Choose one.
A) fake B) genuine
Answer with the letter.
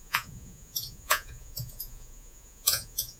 A